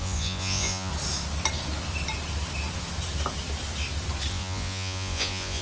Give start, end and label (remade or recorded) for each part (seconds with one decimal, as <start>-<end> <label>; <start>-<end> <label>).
0.0-0.9 remade; 0.9-4.3 recorded; 4.3-5.6 remade